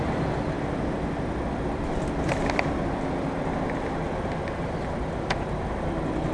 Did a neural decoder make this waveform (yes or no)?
yes